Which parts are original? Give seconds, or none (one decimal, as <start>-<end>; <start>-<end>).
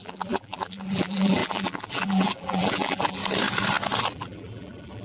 3.2-4.0